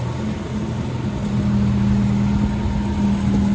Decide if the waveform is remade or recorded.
recorded